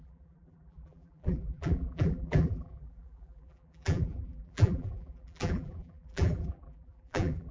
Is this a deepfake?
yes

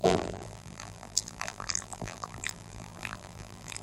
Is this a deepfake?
yes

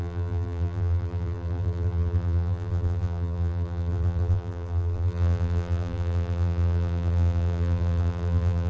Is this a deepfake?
yes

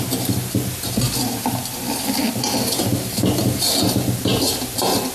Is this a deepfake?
no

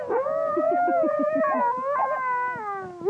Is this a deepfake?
no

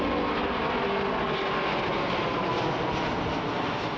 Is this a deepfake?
no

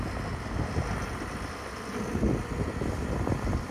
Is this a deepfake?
no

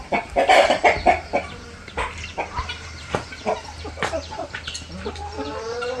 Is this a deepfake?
yes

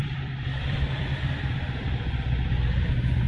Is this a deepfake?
yes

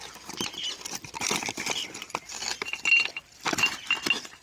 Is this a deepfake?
no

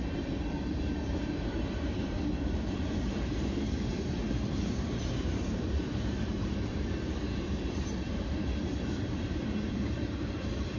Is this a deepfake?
yes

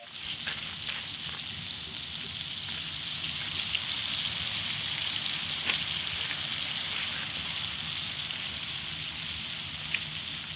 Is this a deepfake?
no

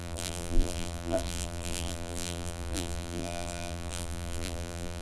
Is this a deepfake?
yes